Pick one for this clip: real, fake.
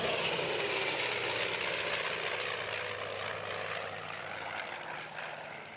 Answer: real